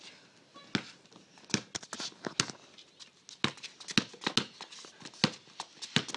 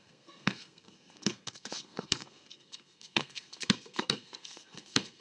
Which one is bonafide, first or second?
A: first